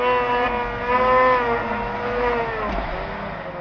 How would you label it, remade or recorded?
recorded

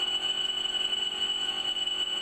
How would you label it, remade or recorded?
remade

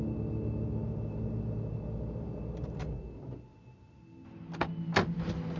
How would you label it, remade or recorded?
recorded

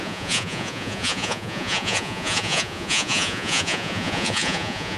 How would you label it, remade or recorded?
remade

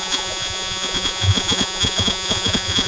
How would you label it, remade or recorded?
remade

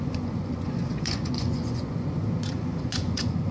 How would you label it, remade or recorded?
remade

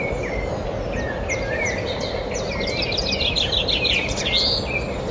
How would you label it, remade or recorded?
recorded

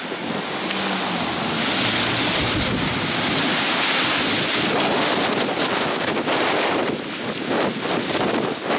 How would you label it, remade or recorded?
recorded